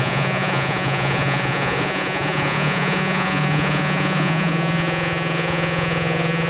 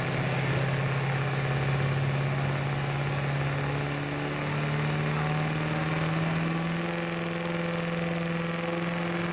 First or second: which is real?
second